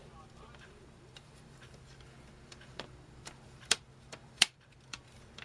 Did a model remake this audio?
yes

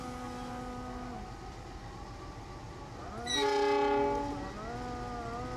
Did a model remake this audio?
no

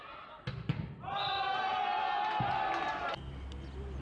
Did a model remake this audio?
no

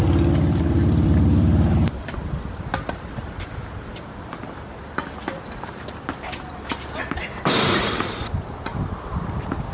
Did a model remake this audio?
yes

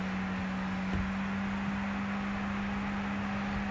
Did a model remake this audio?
no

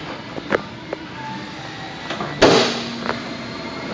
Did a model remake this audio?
no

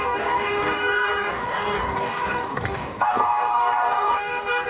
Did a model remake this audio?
yes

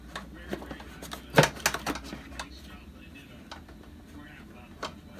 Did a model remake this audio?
no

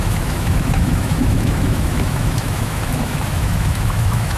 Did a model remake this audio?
yes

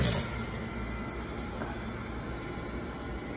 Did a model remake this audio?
no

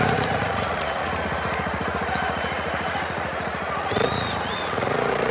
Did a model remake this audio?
yes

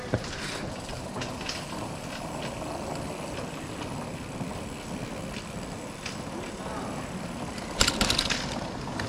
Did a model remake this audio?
no